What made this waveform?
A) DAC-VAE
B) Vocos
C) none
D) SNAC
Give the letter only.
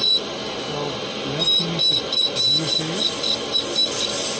C